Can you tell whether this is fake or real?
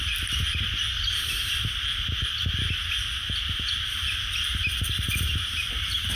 real